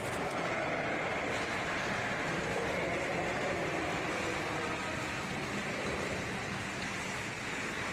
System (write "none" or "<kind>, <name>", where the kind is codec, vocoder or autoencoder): none